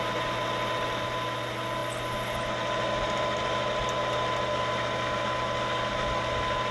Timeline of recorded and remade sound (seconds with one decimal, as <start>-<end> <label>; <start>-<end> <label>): 0.0-6.7 recorded